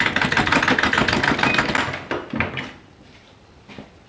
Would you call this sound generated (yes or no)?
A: no